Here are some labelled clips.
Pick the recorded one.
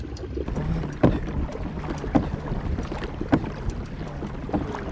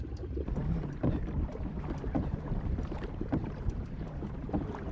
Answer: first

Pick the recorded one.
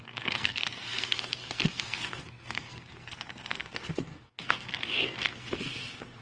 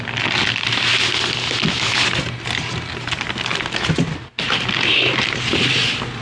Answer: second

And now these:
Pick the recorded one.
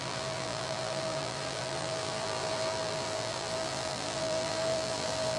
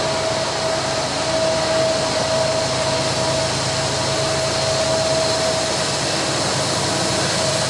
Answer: second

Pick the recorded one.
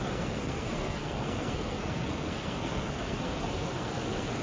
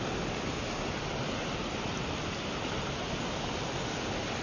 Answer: second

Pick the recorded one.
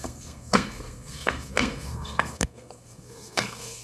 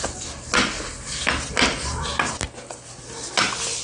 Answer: second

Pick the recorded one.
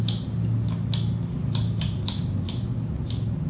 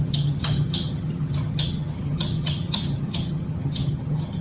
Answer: first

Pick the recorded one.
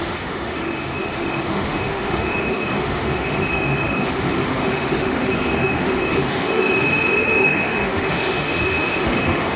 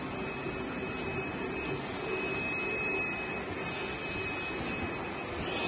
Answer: second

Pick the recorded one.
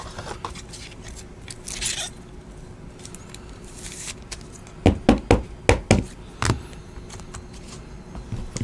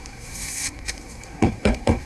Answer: first